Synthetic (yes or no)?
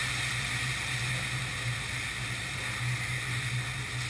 no